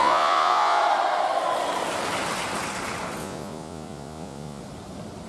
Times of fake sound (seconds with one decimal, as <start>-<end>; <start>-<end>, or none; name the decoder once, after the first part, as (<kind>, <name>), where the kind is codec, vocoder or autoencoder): 0.0-0.8 (vocoder, Vocos); 3.2-4.6